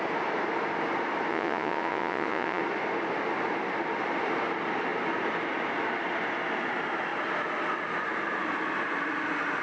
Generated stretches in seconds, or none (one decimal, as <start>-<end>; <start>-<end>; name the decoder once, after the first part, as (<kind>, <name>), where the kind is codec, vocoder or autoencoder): 1.3-2.6 (vocoder, Vocos)